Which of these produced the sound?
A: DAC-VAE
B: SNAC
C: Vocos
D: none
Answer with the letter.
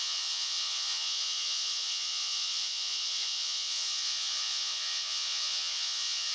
C